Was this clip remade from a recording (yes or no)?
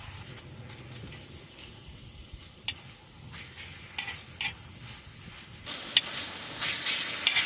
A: no